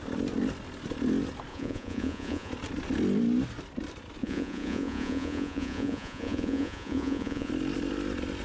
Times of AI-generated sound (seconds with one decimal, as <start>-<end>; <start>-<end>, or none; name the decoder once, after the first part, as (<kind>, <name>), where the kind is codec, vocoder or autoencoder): 1.5-2.5 (vocoder, Vocos); 4.2-7.5